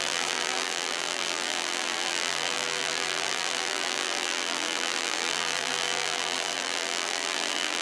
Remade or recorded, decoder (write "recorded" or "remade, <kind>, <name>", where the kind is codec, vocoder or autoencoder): remade, vocoder, BigVGAN v2